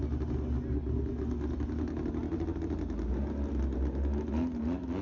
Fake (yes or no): no